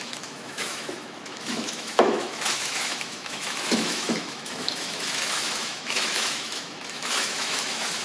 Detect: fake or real fake